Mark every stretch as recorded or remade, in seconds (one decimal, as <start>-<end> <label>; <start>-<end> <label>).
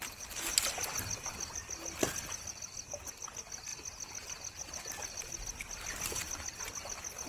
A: 0.0-7.3 recorded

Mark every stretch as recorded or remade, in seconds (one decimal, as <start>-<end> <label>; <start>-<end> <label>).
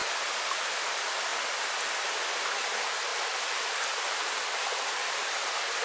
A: 0.0-5.8 recorded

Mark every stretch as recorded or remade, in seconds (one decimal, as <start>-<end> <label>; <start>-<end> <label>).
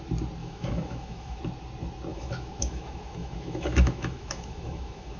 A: 0.0-0.4 recorded; 0.4-1.4 remade; 1.4-2.1 recorded; 2.1-5.2 remade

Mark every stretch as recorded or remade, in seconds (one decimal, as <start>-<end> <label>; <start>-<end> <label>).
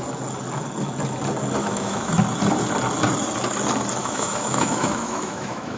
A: 0.0-1.6 recorded; 1.6-2.1 remade; 2.1-4.0 recorded; 4.0-5.8 remade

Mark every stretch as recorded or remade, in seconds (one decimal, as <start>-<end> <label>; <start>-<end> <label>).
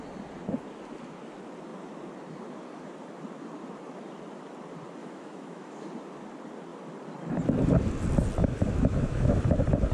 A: 0.0-5.0 recorded; 5.0-5.9 remade; 5.9-8.4 recorded; 8.4-9.4 remade; 9.4-9.9 recorded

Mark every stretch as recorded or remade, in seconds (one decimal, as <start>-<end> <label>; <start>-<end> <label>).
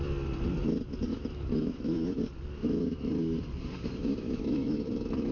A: 0.0-1.1 recorded; 1.1-2.2 remade; 2.2-2.6 recorded; 2.6-3.1 remade; 3.1-4.0 recorded; 4.0-5.3 remade